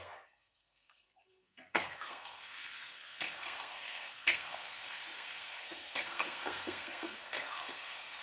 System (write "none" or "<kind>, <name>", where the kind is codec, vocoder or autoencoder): codec, SNAC